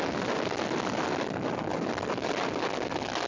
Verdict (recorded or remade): recorded